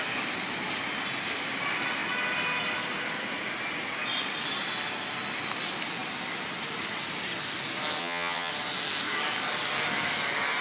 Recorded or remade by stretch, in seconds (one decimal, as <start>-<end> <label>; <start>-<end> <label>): 0.0-8.0 recorded; 8.0-8.5 remade; 8.5-10.6 recorded